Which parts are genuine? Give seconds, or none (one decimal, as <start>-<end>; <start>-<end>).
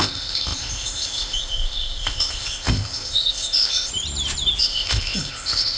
3.9-4.6